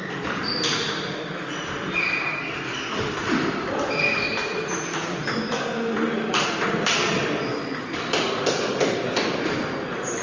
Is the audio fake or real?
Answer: fake